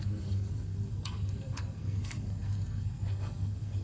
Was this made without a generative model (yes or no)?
no